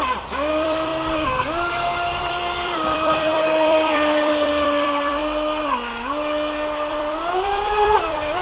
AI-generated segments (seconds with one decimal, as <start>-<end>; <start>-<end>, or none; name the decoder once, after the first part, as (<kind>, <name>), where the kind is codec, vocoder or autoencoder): 0.0-0.9 (vocoder, BigVGAN v2); 2.2-5.2; 6.9-8.4